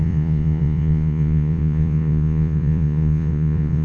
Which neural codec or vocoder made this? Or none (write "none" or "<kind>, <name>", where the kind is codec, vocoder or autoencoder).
vocoder, Vocos